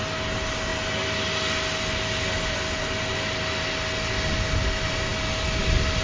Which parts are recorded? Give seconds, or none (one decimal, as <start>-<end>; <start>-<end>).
0.0-6.0